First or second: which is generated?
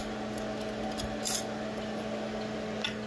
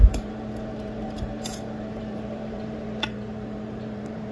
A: second